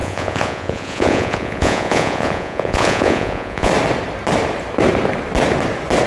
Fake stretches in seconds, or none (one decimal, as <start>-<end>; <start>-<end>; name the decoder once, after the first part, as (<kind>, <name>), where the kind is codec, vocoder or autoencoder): 0.0-3.7 (vocoder, Vocos)